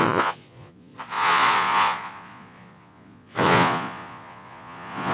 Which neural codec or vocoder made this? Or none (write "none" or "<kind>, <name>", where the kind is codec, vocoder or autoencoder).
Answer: vocoder, Vocos